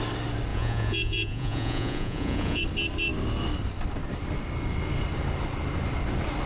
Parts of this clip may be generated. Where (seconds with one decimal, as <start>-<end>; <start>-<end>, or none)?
0.5-2.6